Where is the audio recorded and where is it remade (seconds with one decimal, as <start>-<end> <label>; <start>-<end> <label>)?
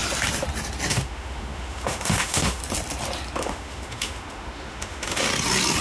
0.0-0.9 recorded; 0.9-2.6 remade; 2.6-3.4 recorded; 3.4-5.3 remade; 5.3-5.8 recorded